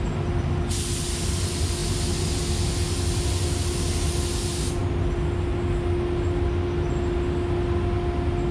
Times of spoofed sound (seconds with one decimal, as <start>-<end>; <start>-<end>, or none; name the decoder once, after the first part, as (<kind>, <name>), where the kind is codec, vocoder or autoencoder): none